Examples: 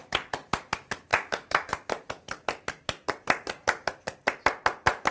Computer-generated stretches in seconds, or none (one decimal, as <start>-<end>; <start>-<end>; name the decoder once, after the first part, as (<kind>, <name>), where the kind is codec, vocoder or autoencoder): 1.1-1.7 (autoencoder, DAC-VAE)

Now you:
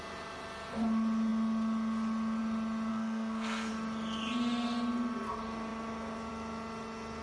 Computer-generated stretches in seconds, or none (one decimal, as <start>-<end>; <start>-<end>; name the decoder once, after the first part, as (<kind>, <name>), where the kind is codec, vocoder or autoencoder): 2.9-3.7 (codec, SNAC)

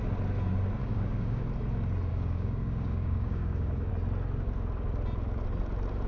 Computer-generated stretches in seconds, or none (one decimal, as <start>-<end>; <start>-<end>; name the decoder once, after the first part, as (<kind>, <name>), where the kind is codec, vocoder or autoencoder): 0.8-1.4 (codec, DAC); 2.1-3.9

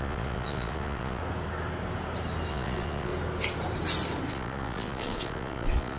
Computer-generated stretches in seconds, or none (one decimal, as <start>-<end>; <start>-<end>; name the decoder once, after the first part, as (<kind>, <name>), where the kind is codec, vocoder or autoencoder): 0.0-1.2 (vocoder, Vocos); 2.5-3.1; 4.3-6.0

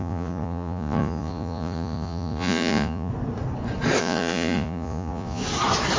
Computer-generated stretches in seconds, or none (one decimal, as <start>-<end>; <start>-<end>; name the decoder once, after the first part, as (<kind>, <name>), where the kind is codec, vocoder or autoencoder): 0.0-3.1 (vocoder, Vocos); 4.0-5.4

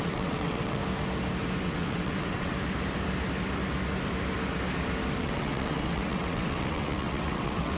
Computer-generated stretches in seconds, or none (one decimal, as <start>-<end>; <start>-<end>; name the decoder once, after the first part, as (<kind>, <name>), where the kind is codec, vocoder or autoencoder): 0.0-0.8 (vocoder, WaveNeXt); 1.6-2.5; 5.2-7.8

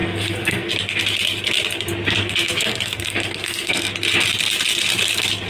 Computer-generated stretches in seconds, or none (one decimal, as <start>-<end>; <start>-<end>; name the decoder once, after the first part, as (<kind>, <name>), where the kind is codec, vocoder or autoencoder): 0.0-0.7 (codec, SNAC); 2.2-3.9